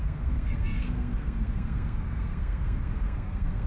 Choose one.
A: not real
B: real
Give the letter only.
A